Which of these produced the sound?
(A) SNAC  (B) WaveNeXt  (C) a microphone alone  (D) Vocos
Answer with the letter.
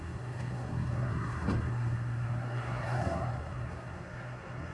A